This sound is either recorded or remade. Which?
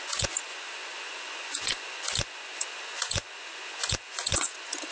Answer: remade